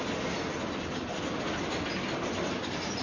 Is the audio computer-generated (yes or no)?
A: no